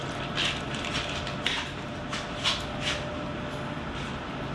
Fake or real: real